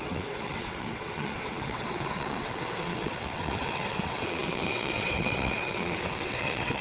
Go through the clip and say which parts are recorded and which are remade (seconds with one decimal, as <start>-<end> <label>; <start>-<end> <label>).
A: 0.0-6.8 remade